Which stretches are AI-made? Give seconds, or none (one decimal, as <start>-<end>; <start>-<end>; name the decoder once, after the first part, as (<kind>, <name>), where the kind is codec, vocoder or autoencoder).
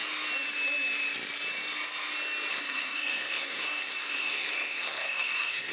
2.5-5.7 (codec, SNAC)